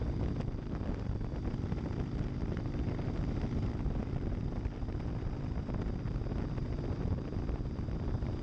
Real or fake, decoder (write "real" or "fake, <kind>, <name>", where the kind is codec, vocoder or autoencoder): fake, vocoder, BigVGAN v2